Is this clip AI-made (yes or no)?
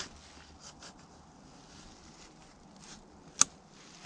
no